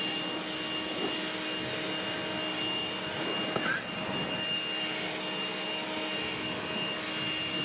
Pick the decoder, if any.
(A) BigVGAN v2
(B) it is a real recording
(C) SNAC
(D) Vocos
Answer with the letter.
B